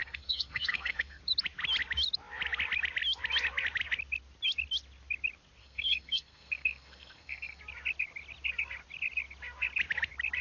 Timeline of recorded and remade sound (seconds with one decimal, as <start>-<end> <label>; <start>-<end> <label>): 0.0-1.2 remade; 1.2-5.6 recorded; 5.6-7.6 remade; 7.6-10.4 recorded